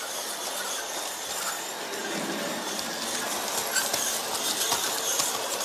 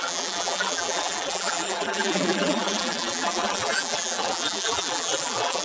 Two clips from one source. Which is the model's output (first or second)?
second